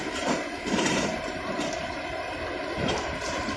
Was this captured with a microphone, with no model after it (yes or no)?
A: no